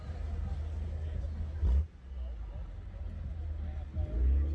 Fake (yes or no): no